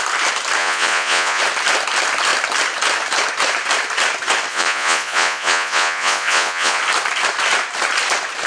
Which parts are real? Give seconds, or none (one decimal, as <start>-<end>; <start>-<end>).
0.0-0.6; 1.4-4.5; 6.8-8.5